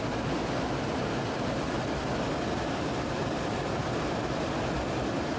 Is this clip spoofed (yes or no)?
yes